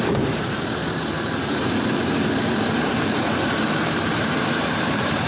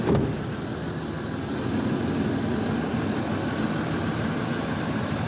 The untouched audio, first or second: second